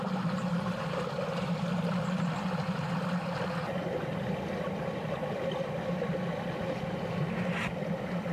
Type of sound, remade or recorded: remade